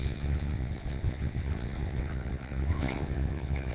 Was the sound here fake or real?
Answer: fake